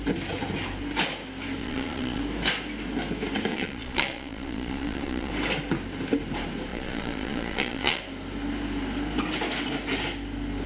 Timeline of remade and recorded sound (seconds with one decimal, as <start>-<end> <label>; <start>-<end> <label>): 0.0-1.6 recorded; 1.6-2.2 remade; 2.2-3.5 recorded; 3.5-5.3 remade; 5.3-6.7 recorded; 6.7-8.0 remade; 8.0-10.7 recorded